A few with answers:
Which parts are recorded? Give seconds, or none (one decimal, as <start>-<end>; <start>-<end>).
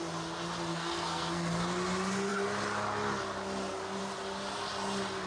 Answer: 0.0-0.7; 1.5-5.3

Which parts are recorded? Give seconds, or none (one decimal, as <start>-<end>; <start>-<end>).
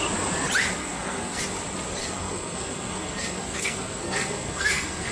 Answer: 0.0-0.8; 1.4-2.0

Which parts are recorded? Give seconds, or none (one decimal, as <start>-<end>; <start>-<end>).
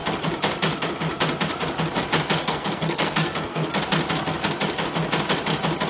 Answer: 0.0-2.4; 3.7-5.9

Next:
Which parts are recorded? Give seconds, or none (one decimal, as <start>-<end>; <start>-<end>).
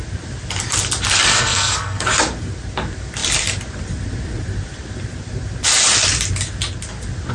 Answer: 0.0-1.3; 2.1-7.3